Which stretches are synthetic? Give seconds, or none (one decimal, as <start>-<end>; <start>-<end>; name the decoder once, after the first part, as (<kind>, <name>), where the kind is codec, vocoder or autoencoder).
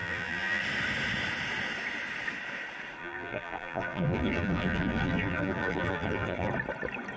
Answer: 0.0-0.6 (vocoder, BigVGAN v2); 3.0-6.5